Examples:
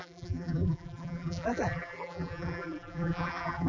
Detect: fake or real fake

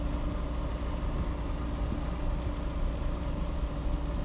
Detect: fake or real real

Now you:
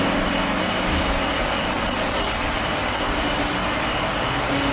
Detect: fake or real real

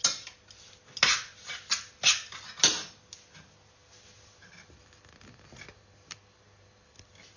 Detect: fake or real real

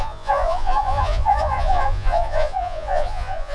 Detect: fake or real fake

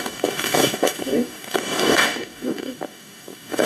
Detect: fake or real fake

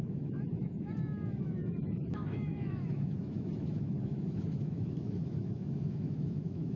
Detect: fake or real fake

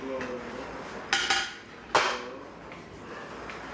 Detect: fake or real real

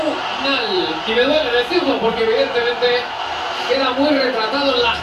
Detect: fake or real real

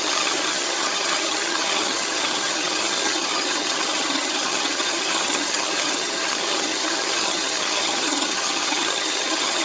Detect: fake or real fake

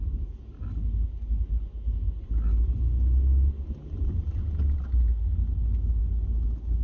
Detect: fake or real real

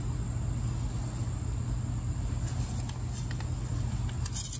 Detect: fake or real real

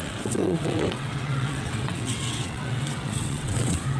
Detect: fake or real fake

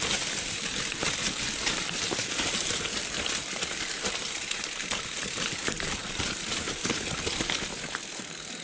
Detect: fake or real fake